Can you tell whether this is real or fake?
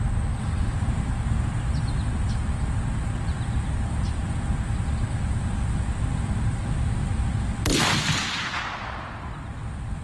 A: real